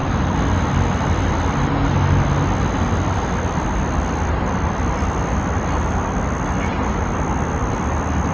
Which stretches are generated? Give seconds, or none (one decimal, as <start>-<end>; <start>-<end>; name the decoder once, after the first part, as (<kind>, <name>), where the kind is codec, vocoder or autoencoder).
none